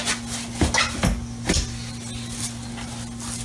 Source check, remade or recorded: recorded